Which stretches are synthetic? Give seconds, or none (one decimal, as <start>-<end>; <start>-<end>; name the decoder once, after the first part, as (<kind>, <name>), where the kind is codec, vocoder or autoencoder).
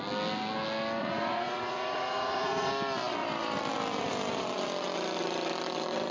1.0-2.7 (vocoder, Vocos)